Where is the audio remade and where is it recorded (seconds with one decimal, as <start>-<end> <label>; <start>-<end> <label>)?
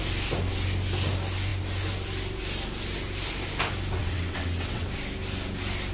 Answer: 0.0-4.0 recorded; 4.0-4.9 remade; 4.9-5.9 recorded